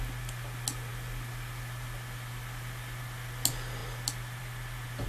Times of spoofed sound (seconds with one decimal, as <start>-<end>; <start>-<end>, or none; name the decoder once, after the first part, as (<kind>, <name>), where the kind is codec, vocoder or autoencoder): none